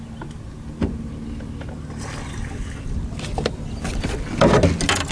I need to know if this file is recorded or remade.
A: recorded